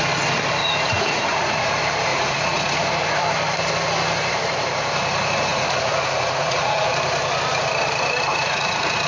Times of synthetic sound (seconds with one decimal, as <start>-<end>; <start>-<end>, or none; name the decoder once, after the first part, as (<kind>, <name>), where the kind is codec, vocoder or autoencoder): 0.6-1.7 (vocoder, Vocos); 2.1-3.2; 5.5-6.9; 8.3-9.1